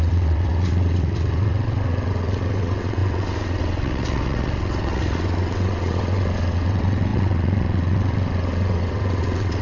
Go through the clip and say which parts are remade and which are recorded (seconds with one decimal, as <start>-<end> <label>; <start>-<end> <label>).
0.0-9.6 remade